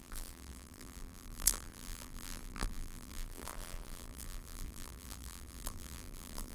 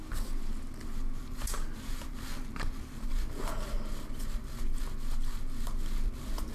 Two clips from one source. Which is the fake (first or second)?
first